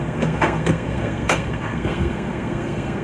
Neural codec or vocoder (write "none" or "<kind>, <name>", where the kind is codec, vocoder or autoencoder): codec, SNAC